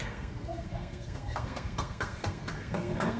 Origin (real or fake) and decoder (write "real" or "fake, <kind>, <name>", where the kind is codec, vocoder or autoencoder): fake, codec, SNAC